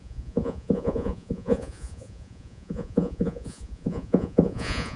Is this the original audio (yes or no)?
no